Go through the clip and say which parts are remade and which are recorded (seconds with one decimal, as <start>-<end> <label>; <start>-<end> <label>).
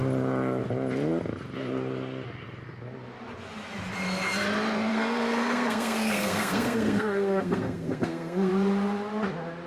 0.0-4.9 recorded; 4.9-8.5 remade; 8.5-9.7 recorded